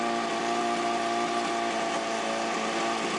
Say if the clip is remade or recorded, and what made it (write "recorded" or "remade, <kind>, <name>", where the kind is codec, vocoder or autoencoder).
recorded